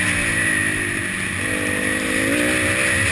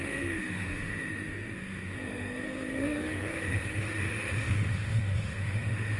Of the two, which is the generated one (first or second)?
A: second